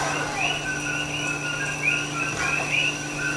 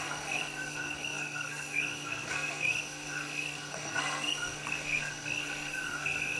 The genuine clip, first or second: first